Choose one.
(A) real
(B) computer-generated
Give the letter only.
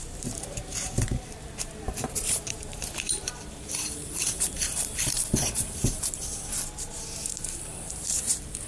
B